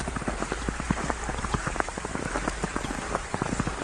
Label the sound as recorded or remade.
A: remade